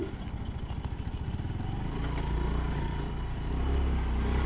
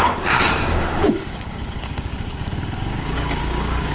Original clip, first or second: first